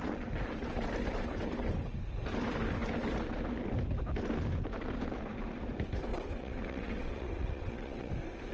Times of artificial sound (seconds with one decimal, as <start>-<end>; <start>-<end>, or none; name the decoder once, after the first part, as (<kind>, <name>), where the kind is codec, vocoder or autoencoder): 6.1-8.1 (vocoder, WaveNeXt)